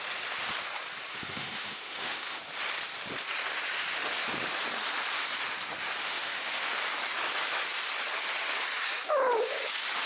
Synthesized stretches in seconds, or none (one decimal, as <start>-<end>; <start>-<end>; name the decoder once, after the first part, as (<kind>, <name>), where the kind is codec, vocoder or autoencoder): 1.1-2.4 (autoencoder, DAC-VAE); 6.0-6.8